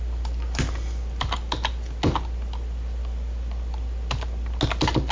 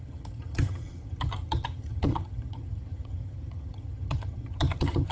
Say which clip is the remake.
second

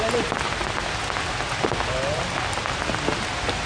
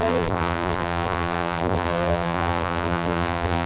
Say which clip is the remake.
second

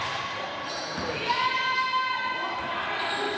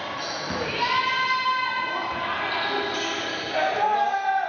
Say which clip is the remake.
first